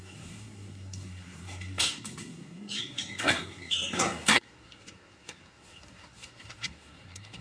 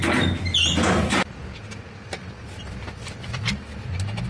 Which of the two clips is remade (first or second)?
first